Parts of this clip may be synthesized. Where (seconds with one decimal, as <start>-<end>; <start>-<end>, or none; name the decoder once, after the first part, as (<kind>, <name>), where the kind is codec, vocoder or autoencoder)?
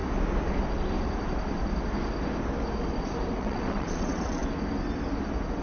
3.3-4.4 (vocoder, WaveNeXt)